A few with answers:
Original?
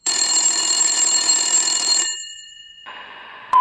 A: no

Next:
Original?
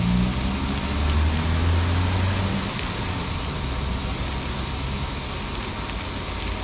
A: yes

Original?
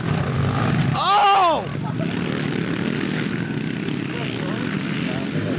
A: yes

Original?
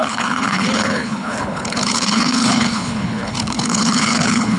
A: no